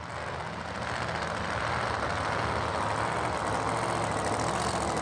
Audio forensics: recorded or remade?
recorded